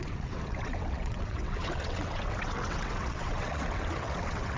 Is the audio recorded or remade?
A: remade